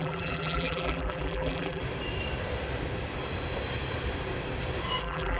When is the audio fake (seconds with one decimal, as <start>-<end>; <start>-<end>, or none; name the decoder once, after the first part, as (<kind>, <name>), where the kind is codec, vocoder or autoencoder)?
0.0-1.8 (vocoder, BigVGAN v2); 5.0-5.4

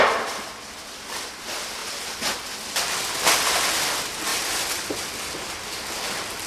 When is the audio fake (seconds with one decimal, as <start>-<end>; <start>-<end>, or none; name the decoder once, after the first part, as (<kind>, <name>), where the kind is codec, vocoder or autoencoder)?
4.3-6.5 (vocoder, BigVGAN v2)

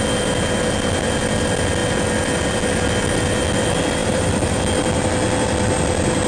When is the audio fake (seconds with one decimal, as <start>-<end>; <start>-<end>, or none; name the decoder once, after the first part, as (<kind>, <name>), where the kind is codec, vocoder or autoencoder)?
4.0-4.6 (vocoder, BigVGAN v2)

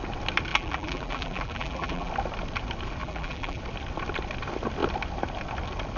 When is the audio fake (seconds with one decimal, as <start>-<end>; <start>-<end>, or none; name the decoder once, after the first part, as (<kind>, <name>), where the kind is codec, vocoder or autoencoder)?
0.5-2.1 (vocoder, BigVGAN v2); 3.0-3.6

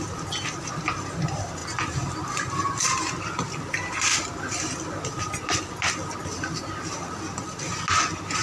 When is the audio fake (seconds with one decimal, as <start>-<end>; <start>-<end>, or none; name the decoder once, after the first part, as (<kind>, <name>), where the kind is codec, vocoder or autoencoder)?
none

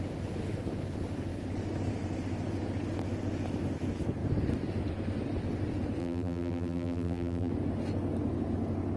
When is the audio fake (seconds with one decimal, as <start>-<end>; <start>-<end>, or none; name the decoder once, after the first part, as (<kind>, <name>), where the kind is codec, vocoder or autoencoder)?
6.0-7.5 (vocoder, BigVGAN v2)

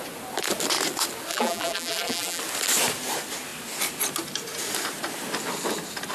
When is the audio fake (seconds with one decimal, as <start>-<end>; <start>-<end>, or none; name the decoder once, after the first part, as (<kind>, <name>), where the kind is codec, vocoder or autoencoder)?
1.3-2.4 (vocoder, BigVGAN v2)